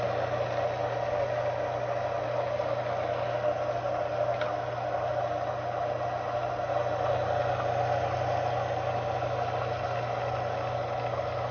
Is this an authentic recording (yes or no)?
yes